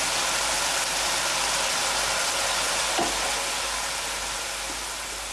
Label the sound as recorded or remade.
recorded